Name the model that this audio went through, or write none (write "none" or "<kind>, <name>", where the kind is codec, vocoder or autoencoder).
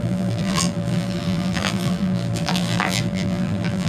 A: vocoder, BigVGAN v2